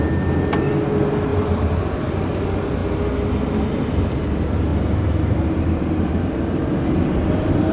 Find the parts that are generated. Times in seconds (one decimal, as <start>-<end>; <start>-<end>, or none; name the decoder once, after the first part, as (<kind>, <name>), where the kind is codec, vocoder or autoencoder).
1.3-1.8 (vocoder, BigVGAN v2); 4.7-6.2